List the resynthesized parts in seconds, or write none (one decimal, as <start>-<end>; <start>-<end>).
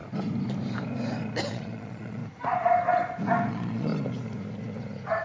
1.5-2.2; 3.5-3.9